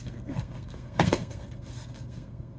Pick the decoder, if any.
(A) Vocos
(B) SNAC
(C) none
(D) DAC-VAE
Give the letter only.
B